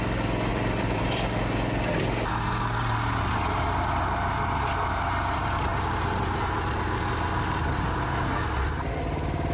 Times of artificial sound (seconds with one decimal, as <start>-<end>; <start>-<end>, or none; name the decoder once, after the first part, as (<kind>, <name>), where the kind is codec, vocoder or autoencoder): 0.5-1.0 (vocoder, BigVGAN v2); 5.7-6.6